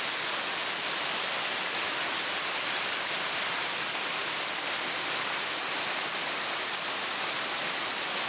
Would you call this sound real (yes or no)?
yes